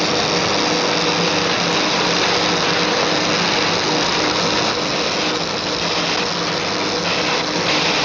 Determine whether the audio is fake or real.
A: real